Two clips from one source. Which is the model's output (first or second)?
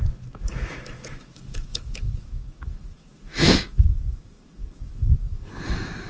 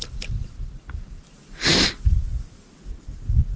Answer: first